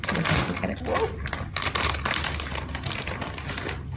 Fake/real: real